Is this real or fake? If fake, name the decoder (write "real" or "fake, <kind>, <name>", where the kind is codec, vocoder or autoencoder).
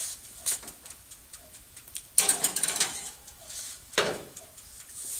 fake, autoencoder, DAC-VAE